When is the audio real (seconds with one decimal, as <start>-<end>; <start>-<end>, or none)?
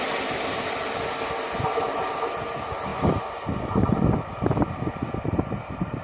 0.0-6.0